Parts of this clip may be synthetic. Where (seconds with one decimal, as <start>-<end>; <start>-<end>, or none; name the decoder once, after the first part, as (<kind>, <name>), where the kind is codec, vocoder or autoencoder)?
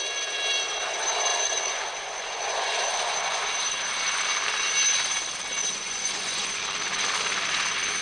1.3-3.5 (vocoder, Vocos); 5.6-6.6